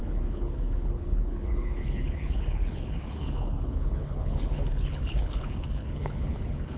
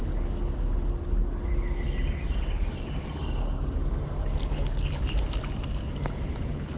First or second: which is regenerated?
first